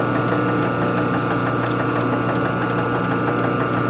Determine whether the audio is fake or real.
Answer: real